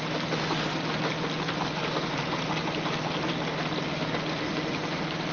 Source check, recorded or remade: recorded